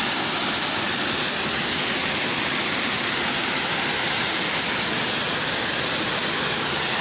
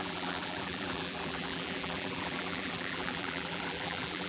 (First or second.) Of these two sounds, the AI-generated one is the second